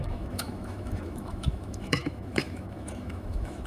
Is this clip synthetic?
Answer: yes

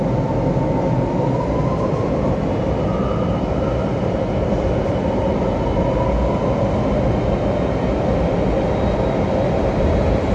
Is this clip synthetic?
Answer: no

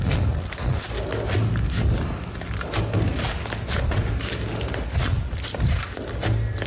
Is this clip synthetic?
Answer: no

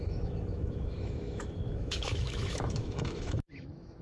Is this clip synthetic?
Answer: yes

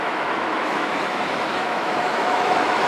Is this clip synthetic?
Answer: yes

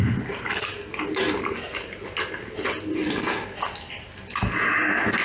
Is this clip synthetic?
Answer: no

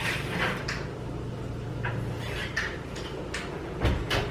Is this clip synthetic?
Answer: no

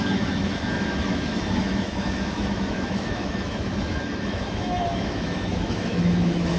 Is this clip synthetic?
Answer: yes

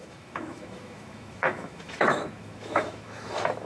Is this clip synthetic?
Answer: yes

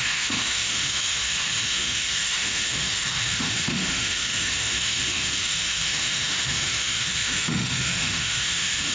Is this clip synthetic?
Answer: yes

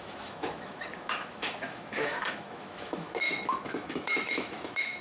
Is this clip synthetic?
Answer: yes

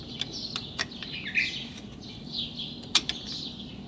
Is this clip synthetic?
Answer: no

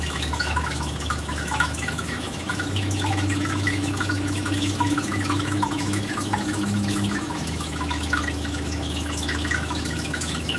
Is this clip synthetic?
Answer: yes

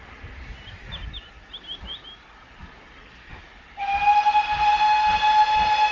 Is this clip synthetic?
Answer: no